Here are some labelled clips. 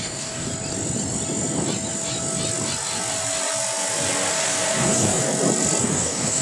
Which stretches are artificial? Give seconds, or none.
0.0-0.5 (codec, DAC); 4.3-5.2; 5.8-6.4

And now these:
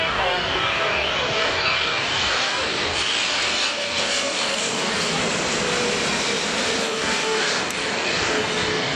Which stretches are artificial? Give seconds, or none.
0.0-5.2 (codec, DAC); 6.8-9.0

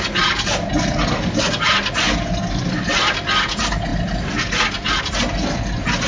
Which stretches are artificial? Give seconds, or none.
none

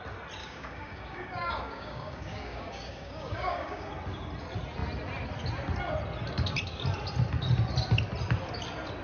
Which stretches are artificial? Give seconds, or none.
0.4-3.9 (codec, DAC)